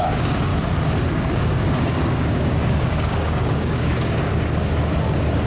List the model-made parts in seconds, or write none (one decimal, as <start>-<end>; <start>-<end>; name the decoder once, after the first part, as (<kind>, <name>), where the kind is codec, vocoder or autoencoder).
0.0-0.5 (codec, DAC); 1.1-4.3